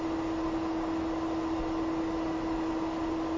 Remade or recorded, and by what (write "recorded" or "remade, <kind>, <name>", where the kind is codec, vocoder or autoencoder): recorded